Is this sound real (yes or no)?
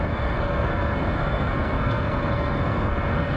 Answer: no